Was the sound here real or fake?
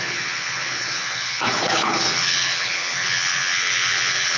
fake